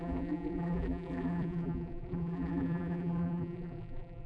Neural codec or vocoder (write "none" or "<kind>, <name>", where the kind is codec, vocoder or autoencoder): vocoder, BigVGAN v2